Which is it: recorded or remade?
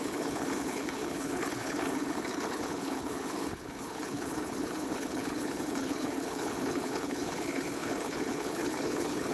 remade